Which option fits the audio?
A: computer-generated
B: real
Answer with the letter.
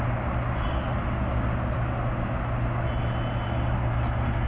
B